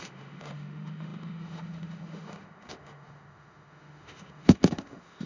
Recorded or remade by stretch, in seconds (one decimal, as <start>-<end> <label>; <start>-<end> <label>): 0.0-5.3 remade